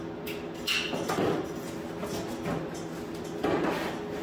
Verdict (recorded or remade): recorded